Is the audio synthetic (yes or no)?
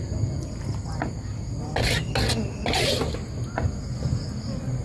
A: no